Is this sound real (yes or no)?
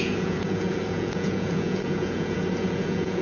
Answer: no